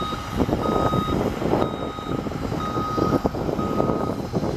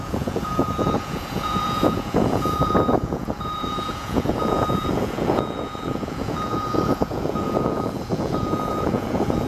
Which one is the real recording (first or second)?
first